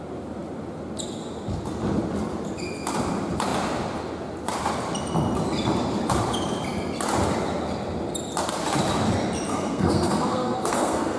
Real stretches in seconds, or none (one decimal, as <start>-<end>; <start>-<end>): 0.0-9.5